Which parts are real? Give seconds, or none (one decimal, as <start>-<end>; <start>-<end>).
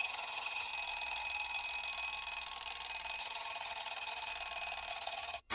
0.7-3.2; 4.3-4.9